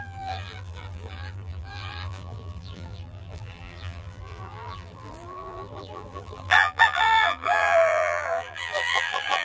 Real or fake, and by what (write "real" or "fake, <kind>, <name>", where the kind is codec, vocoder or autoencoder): fake, vocoder, BigVGAN v2